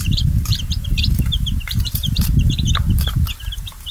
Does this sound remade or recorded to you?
remade